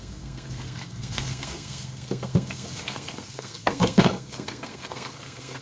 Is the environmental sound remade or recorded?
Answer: remade